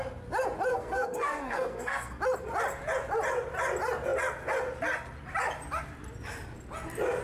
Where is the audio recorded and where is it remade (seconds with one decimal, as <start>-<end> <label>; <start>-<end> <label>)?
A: 0.0-0.7 recorded; 0.7-2.2 remade; 2.2-7.2 recorded